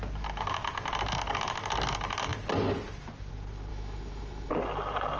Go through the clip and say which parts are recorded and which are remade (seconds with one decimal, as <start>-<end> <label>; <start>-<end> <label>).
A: 0.0-3.7 recorded; 3.7-4.5 remade; 4.5-5.2 recorded